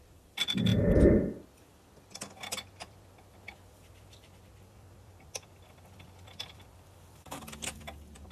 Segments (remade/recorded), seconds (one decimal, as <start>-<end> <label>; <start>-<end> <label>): 0.0-0.7 remade; 0.7-1.3 recorded; 1.3-8.3 remade